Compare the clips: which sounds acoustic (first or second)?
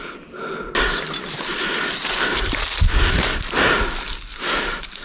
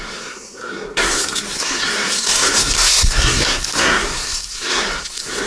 first